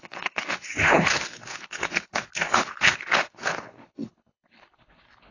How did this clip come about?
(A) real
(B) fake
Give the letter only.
B